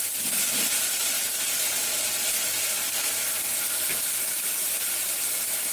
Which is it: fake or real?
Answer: real